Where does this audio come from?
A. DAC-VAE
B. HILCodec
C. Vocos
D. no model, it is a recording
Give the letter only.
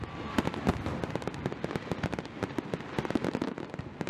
D